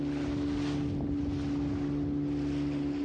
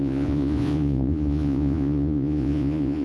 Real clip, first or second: first